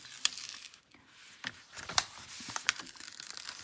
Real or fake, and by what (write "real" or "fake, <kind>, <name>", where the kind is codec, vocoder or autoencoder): real